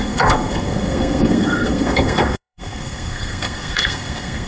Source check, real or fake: fake